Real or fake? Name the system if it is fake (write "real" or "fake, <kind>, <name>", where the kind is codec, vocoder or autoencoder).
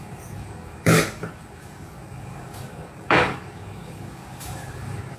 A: fake, codec, DAC